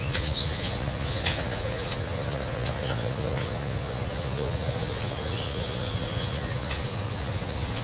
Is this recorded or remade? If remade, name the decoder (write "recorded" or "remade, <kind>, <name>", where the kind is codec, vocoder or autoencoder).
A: remade, vocoder, Vocos